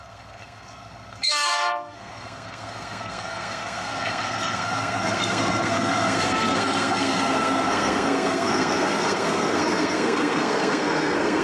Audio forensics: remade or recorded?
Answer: remade